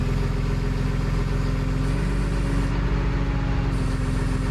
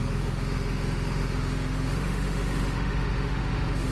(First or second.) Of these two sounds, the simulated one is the second